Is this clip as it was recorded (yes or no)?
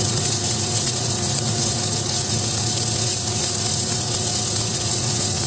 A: no